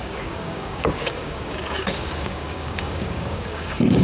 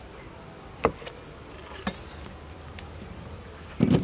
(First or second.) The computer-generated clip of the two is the first